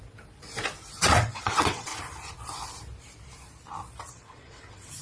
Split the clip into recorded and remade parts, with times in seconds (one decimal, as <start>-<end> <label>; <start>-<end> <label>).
0.0-1.0 recorded; 1.0-1.9 remade; 1.9-4.1 recorded; 4.1-5.0 remade